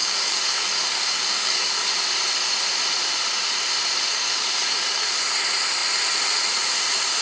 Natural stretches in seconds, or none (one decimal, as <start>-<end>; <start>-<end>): 1.9-4.1; 5.1-7.2